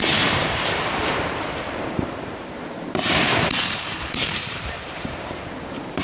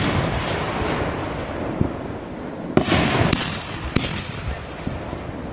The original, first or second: second